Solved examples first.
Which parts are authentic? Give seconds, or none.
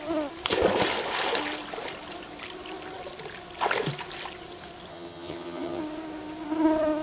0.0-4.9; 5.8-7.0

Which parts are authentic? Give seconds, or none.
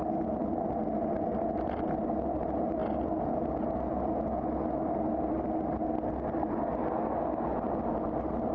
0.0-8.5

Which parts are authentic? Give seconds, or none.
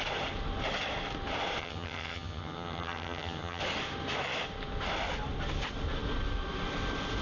0.0-1.6; 3.6-7.2